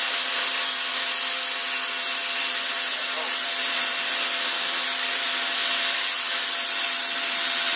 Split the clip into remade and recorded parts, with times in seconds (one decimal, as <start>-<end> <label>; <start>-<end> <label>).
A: 0.0-7.8 recorded